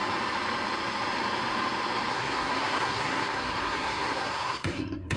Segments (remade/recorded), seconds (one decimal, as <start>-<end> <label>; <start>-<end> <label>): 0.0-2.1 recorded; 2.1-5.2 remade